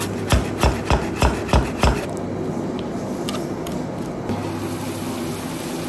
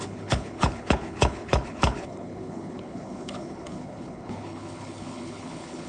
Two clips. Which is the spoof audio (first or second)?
second